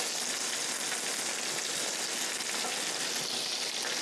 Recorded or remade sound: recorded